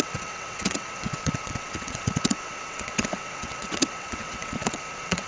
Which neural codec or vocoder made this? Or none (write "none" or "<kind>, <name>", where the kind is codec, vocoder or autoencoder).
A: vocoder, WaveNeXt